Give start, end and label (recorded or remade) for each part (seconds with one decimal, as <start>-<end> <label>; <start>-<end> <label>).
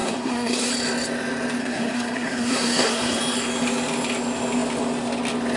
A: 0.0-0.7 remade; 0.7-1.6 recorded; 1.6-3.2 remade; 3.2-5.6 recorded